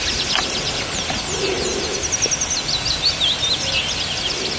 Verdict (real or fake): real